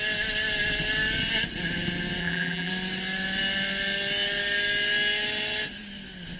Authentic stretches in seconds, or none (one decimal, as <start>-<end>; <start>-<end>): 0.0-2.2; 2.7-6.4